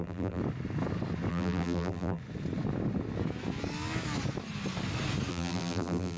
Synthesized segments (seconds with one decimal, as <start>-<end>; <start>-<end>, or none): 0.0-0.4; 1.3-2.2; 5.3-6.2